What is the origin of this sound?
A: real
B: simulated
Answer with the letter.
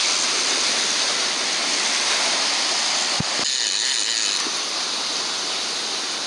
A